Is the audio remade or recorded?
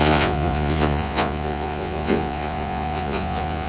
remade